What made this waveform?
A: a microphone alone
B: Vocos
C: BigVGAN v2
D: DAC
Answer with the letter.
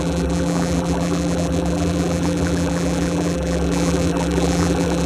C